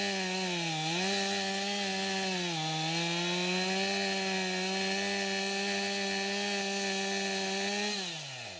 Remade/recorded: recorded